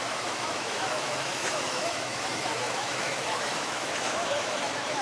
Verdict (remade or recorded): remade